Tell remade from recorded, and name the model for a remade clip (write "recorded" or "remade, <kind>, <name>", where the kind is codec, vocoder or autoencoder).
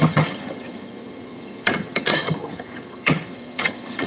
remade, vocoder, HiFi-GAN